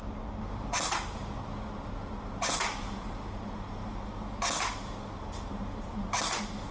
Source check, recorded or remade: recorded